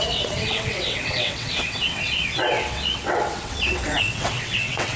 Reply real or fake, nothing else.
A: fake